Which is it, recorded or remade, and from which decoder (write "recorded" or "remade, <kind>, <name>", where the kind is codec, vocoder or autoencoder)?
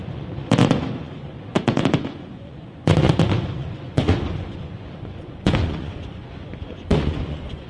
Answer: remade, vocoder, Vocos